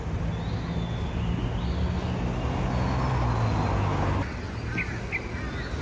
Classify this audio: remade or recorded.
recorded